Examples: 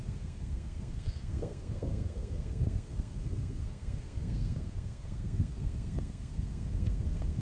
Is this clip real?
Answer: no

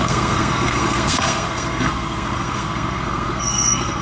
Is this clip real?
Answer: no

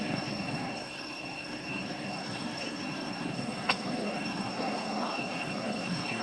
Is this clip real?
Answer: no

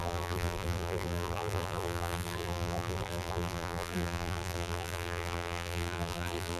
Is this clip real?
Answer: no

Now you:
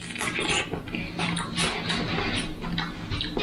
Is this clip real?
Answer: yes